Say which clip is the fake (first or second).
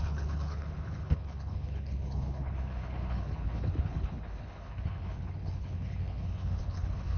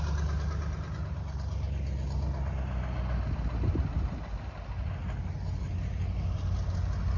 first